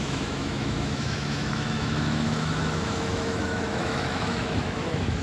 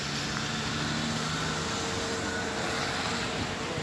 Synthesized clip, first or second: first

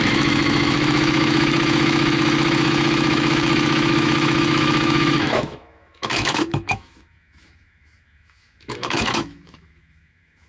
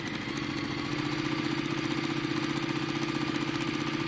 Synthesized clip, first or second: first